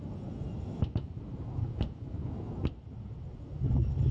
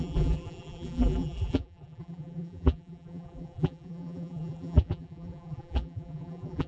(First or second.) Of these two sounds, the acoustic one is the first